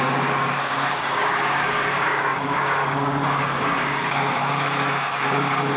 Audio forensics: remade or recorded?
remade